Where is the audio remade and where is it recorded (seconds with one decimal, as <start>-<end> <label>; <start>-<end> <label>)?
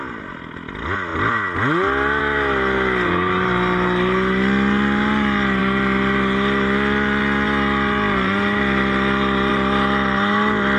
0.0-10.8 recorded